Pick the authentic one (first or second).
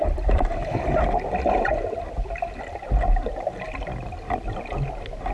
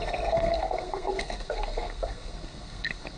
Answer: first